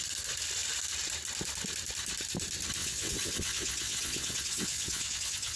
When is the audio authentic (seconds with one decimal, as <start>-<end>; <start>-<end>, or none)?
0.0-2.8